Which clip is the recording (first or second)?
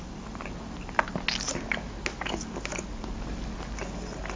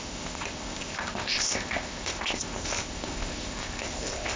first